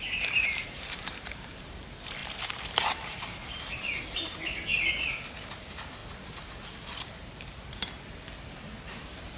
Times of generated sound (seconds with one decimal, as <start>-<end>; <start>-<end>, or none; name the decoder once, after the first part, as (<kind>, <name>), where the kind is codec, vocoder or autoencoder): 0.0-4.7 (vocoder, BigVGAN v2); 5.5-6.0; 8.5-9.4